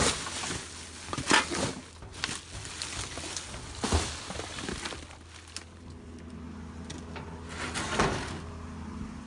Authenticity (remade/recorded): recorded